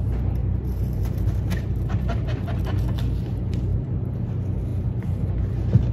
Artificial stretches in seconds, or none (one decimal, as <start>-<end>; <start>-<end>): 0.4-2.5; 3.7-4.3; 4.7-5.3